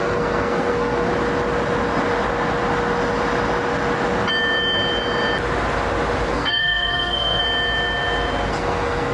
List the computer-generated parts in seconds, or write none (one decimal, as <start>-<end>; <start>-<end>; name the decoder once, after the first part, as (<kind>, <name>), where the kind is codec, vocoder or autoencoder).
0.0-1.1 (codec, SNAC); 6.3-7.4; 8.5-9.1